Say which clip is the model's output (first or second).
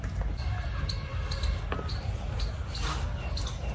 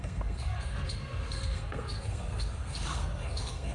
second